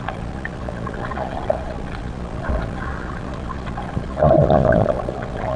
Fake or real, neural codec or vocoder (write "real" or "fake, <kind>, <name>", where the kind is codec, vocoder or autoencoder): fake, vocoder, Vocos